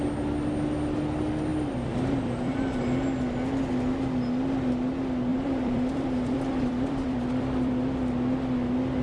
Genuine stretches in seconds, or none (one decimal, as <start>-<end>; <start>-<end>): 0.0-1.5; 2.8-5.3; 7.9-9.0